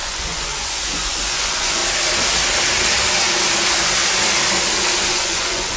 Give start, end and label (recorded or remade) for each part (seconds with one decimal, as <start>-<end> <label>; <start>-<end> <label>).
0.0-1.8 remade; 1.8-5.1 recorded; 5.1-5.8 remade